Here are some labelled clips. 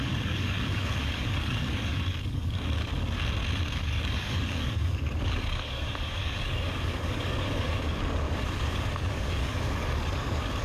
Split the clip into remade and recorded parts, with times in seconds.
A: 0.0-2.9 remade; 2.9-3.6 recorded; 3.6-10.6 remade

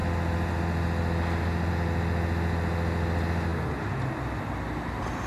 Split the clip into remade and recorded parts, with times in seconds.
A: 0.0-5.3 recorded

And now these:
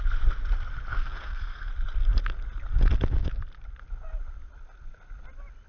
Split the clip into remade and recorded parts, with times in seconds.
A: 0.0-0.9 recorded; 0.9-1.7 remade; 1.7-5.7 recorded

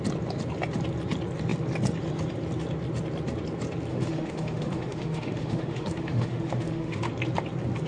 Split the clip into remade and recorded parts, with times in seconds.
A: 0.0-3.9 recorded; 3.9-7.1 remade; 7.1-7.9 recorded

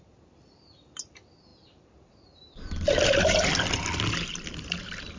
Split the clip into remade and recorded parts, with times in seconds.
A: 0.0-5.2 recorded

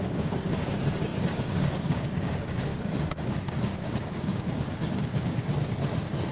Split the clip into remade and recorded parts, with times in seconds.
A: 0.0-5.4 remade; 5.4-6.3 recorded

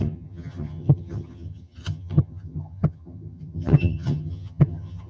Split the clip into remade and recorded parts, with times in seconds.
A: 0.0-5.1 remade

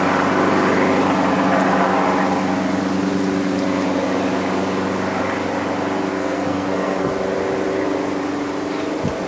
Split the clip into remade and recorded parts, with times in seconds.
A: 0.0-6.1 recorded; 6.1-7.1 remade; 7.1-9.3 recorded